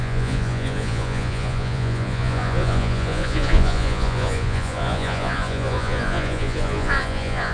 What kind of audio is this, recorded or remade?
remade